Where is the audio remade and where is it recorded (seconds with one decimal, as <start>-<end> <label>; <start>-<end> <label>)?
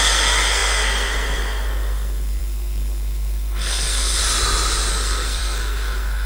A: 0.0-4.2 remade; 4.2-4.9 recorded; 4.9-6.3 remade